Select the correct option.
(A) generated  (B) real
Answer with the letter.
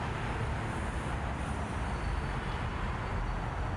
B